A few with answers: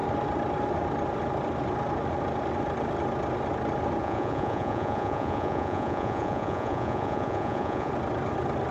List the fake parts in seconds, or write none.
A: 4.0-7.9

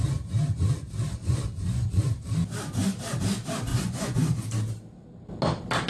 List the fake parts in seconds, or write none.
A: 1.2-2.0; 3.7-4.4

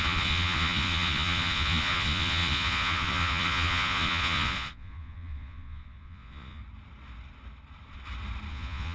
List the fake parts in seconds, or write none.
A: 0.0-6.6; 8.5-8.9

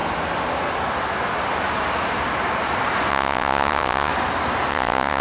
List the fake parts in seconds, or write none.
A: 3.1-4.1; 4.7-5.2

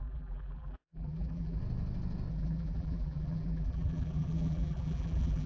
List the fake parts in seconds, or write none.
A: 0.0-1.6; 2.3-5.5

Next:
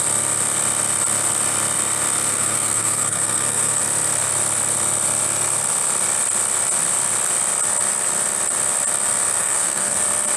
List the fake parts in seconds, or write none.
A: 2.3-3.8; 9.4-10.0